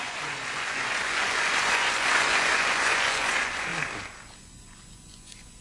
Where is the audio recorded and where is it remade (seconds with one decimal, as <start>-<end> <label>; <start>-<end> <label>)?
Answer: 0.0-3.7 remade; 3.7-4.4 recorded; 4.4-5.6 remade